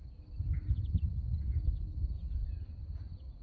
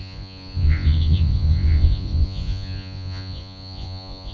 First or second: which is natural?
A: first